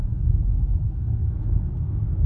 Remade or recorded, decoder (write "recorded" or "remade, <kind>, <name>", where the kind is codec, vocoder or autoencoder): remade, codec, SNAC